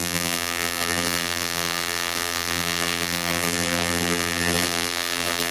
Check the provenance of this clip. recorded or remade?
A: remade